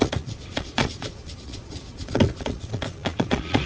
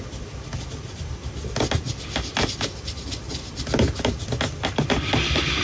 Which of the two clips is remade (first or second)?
first